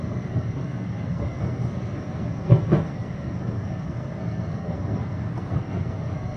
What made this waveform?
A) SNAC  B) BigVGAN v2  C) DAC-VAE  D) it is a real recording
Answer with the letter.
A